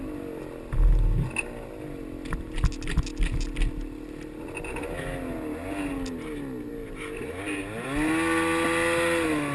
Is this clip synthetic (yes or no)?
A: no